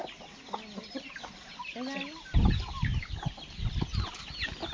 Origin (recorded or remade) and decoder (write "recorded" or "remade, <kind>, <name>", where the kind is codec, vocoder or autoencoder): recorded